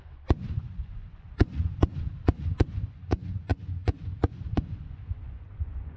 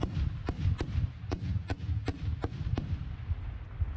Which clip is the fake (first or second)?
first